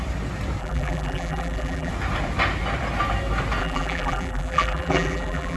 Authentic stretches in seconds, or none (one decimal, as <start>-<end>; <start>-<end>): 0.0-0.6; 1.9-3.6